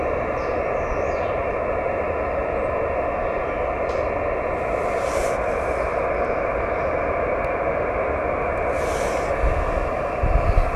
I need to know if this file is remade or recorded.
recorded